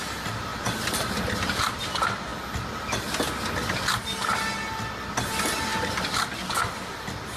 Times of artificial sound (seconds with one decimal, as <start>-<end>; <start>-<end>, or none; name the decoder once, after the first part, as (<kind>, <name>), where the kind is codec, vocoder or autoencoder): 0.5-1.1 (vocoder, BigVGAN v2); 5.7-7.4